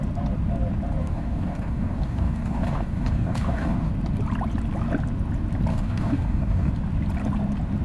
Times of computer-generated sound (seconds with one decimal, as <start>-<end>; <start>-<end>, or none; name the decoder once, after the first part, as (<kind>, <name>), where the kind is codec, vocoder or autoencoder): 1.0-3.9 (codec, DAC); 5.7-6.7